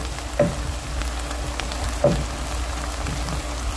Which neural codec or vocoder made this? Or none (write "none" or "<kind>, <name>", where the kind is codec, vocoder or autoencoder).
none